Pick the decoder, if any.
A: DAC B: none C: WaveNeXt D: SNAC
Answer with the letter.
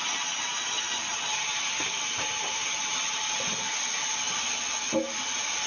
B